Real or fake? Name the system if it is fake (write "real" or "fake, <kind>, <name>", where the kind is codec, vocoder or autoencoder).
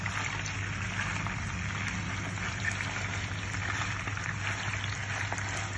real